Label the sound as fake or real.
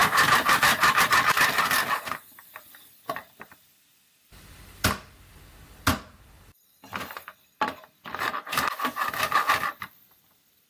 real